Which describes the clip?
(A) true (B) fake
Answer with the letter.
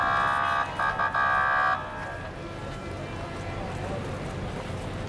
A